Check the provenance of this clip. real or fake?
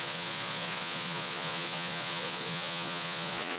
fake